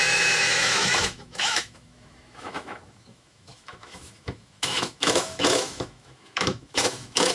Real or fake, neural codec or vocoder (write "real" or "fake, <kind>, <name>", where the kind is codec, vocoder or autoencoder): fake, autoencoder, DAC-VAE